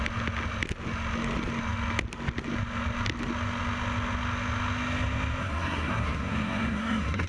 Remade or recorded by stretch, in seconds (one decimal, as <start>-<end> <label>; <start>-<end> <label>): 0.0-5.4 recorded; 5.4-7.3 remade